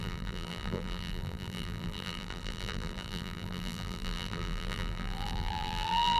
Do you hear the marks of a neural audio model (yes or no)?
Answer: yes